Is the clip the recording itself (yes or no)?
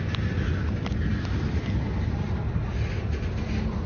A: yes